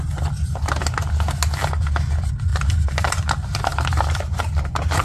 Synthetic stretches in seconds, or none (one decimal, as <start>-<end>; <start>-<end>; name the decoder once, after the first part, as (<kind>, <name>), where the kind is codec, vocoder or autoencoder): 2.5-3.3 (vocoder, BigVGAN v2); 3.7-5.0